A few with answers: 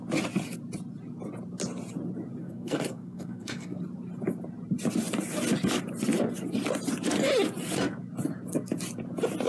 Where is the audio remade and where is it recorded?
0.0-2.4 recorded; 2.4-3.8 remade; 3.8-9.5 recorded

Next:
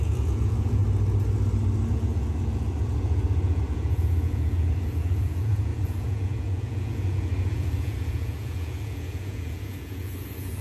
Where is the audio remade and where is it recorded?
0.0-0.8 remade; 0.8-1.9 recorded; 1.9-10.6 remade

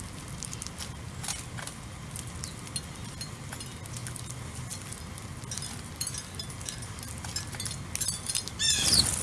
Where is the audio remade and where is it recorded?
0.0-9.2 recorded